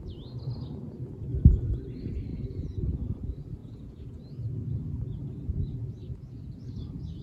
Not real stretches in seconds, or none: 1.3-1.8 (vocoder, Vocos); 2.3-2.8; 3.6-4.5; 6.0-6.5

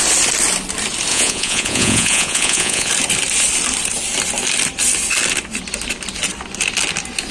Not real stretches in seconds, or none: 1.1-2.9 (vocoder, Vocos)

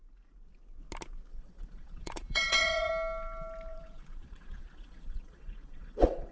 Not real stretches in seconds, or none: 1.3-2.9 (vocoder, Vocos); 3.7-6.3

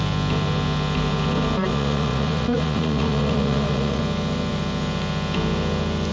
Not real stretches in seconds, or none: 1.7-4.0 (vocoder, Vocos)

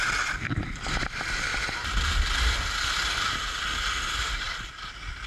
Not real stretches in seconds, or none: none

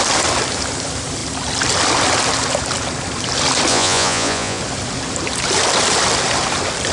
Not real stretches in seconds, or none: 3.7-4.6 (vocoder, Vocos)